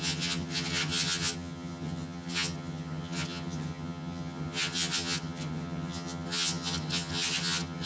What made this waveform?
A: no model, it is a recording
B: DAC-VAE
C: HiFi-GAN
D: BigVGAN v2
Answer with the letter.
C